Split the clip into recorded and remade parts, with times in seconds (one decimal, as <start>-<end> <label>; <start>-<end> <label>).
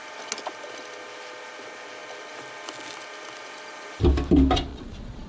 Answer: 0.0-4.7 recorded; 4.7-5.3 remade